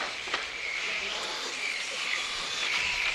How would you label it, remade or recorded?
remade